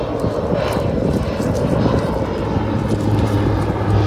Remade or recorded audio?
recorded